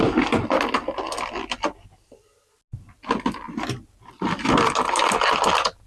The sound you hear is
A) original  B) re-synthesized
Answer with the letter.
A